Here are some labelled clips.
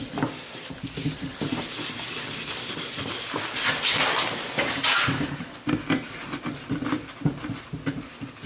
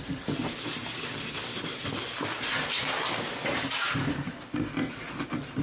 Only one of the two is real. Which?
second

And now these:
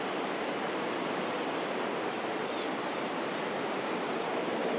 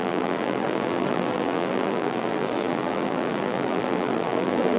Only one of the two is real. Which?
first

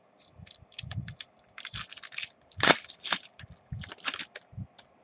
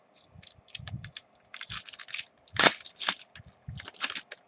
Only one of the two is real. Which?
second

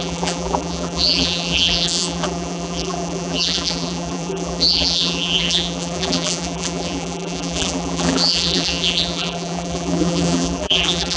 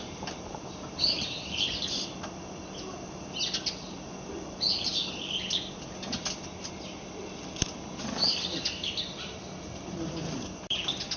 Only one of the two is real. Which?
second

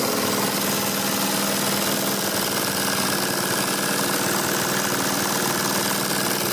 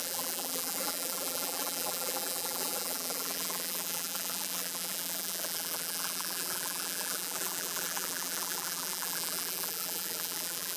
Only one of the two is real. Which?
first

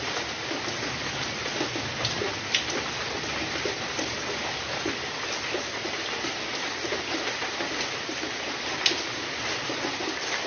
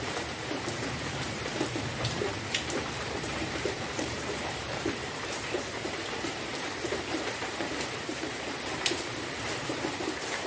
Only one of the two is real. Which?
first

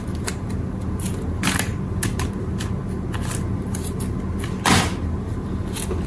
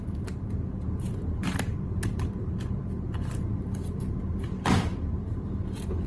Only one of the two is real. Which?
first